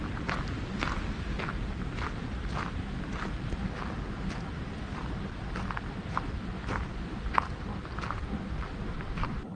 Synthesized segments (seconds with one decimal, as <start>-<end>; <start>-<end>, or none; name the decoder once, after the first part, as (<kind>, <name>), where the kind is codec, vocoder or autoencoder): none